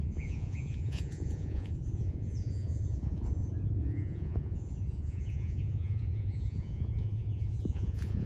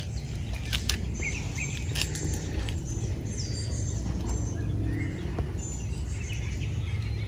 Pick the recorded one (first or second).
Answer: second